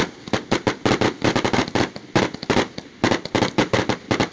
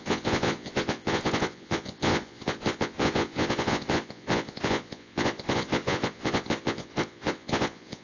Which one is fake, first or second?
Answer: second